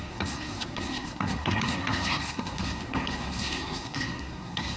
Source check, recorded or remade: remade